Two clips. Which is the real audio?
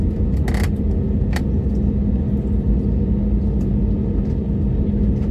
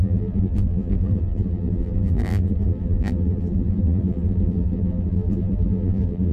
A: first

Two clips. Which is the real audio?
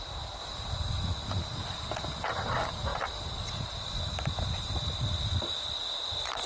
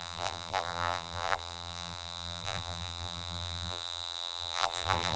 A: first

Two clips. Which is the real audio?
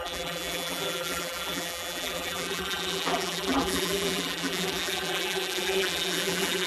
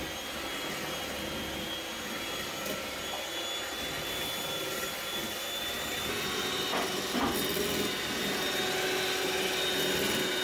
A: second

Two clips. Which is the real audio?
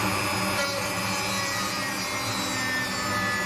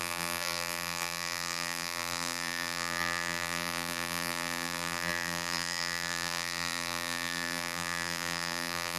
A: first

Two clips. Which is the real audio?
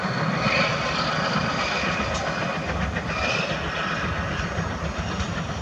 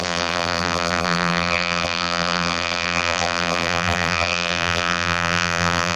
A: first